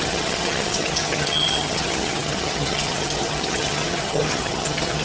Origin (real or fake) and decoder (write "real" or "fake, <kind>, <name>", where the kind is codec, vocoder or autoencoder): fake, vocoder, HiFi-GAN